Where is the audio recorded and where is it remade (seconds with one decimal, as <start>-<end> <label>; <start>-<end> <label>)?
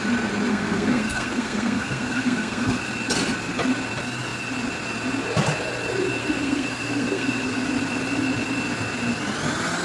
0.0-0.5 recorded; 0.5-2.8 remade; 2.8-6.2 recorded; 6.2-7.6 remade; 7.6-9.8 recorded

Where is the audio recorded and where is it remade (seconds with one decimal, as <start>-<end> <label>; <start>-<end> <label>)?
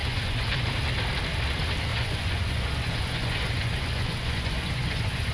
0.0-0.7 remade; 0.7-1.9 recorded; 1.9-5.3 remade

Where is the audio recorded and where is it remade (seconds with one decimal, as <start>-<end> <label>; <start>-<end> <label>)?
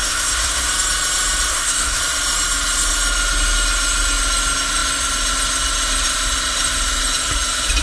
0.0-0.7 remade; 0.7-1.5 recorded; 1.5-2.0 remade; 2.0-7.8 recorded